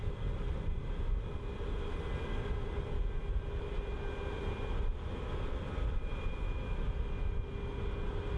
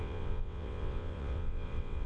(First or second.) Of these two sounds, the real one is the first